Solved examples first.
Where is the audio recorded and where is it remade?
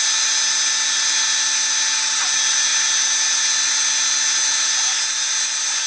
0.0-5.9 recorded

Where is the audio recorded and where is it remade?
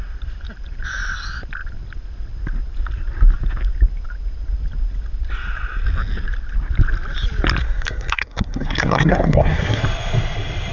0.0-7.6 recorded; 7.6-9.8 remade; 9.8-10.7 recorded